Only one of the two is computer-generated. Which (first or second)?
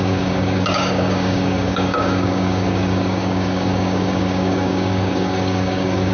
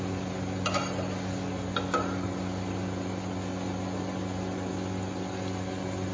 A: first